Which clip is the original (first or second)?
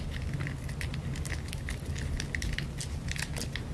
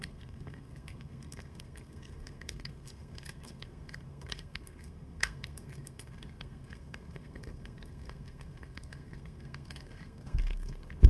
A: first